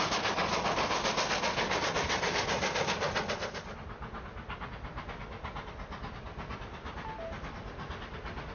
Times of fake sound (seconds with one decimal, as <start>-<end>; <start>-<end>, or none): none